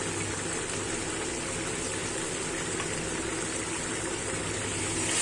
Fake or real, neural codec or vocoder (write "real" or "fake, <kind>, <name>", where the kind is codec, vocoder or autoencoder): real